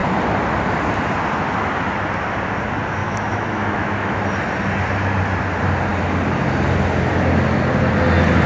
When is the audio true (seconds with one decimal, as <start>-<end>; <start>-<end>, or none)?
0.0-3.0; 4.2-8.5